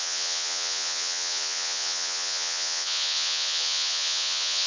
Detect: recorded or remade remade